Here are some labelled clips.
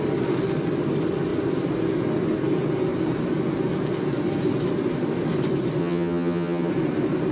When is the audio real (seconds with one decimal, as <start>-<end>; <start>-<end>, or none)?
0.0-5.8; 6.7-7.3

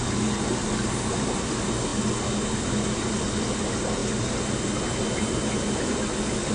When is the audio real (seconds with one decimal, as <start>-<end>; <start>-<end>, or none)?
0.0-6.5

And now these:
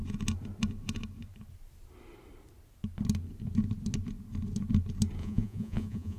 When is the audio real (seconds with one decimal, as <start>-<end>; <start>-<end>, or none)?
0.0-5.2

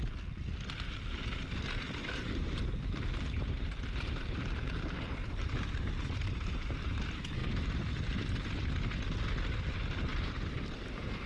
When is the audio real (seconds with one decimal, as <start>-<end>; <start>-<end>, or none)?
0.0-2.0; 7.0-7.4; 8.3-10.1

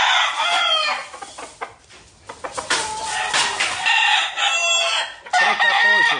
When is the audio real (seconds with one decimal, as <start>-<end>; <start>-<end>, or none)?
0.0-6.2

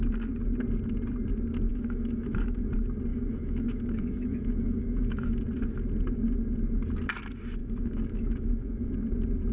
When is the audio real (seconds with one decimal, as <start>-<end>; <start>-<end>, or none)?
0.0-1.7; 2.7-3.1; 5.4-7.6; 8.9-9.5